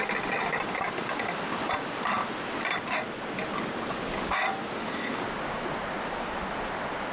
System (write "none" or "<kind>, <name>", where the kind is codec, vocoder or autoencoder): none